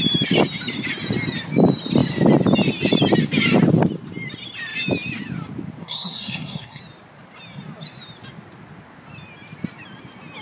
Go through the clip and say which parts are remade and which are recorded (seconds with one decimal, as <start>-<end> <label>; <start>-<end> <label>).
0.0-5.8 recorded; 5.8-6.8 remade; 6.8-10.4 recorded